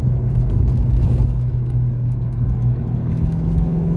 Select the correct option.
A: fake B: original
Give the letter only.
A